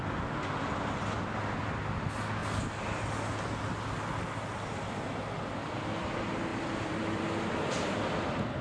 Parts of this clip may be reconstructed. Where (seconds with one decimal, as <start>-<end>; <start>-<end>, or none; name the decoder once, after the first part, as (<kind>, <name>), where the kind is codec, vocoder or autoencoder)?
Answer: 6.5-8.6 (vocoder, BigVGAN v2)